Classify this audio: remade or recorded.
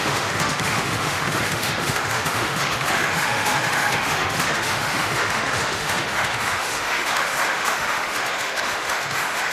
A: remade